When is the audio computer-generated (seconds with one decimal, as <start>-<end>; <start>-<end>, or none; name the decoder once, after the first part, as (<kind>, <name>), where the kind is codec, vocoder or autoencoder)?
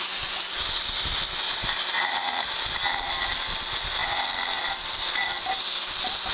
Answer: none